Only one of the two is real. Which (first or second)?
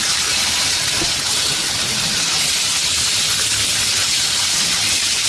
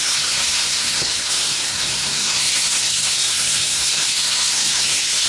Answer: first